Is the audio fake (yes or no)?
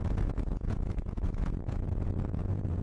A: yes